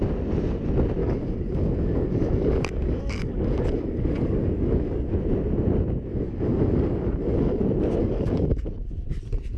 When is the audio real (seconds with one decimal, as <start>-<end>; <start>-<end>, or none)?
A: 0.0-1.0; 5.1-6.1; 7.6-8.0; 8.6-9.6